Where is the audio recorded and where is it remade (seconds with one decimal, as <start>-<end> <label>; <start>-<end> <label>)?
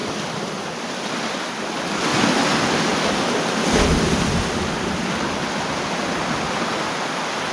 0.0-1.5 remade; 1.5-7.5 recorded